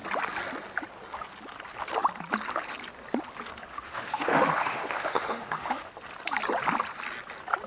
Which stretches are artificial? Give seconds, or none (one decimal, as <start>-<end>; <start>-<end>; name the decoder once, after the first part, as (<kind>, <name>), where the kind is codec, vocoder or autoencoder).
3.7-5.9 (autoencoder, DAC-VAE)